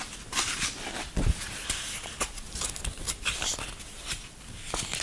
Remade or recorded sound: recorded